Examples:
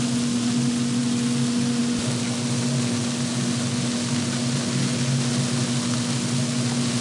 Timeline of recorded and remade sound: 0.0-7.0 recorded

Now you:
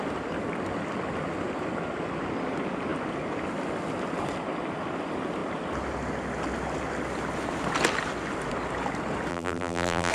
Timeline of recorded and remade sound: 0.0-9.3 recorded; 9.3-10.1 remade

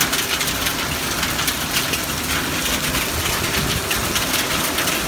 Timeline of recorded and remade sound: 0.0-5.1 recorded

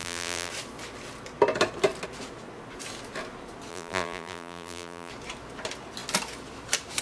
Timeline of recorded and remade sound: 0.0-0.5 remade; 0.5-3.7 recorded; 3.7-5.1 remade; 5.1-7.0 recorded